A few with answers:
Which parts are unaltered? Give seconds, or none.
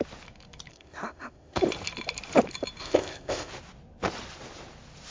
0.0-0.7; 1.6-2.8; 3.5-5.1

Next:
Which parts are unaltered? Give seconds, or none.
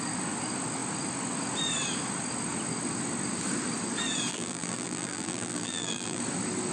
0.0-4.3; 6.2-6.7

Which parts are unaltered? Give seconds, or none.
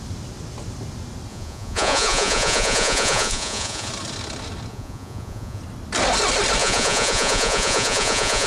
0.0-1.3; 3.9-4.7; 5.6-6.6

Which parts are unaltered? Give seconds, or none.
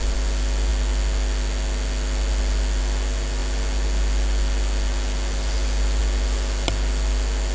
0.0-7.5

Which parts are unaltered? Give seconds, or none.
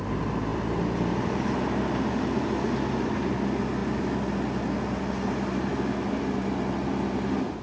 0.0-7.6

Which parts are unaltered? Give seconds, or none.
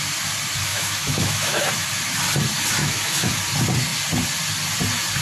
0.0-0.7; 1.7-2.8; 3.3-5.2